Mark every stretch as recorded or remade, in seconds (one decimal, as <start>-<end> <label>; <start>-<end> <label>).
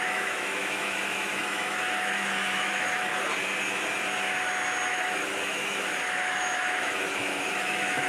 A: 0.0-3.1 remade; 3.1-4.9 recorded; 4.9-8.1 remade